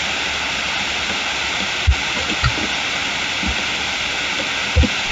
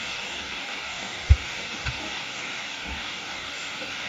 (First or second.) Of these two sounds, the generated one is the second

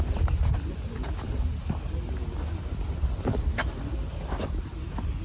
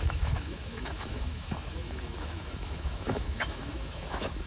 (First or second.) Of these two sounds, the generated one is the second